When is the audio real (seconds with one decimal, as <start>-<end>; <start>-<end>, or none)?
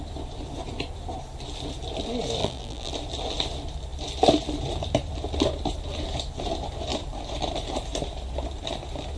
0.0-2.4; 2.9-9.2